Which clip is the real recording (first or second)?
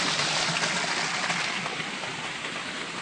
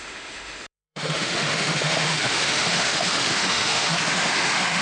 first